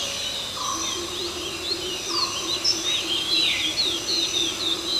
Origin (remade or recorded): recorded